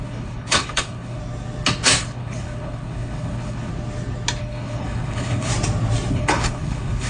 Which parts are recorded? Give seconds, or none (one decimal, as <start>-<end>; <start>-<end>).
1.2-2.0; 3.7-4.4; 5.5-6.1